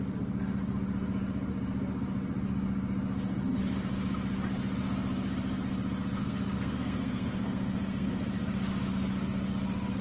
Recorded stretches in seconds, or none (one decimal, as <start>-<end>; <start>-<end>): 0.0-6.2; 8.1-10.0